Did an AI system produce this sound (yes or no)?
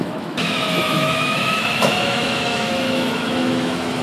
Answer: yes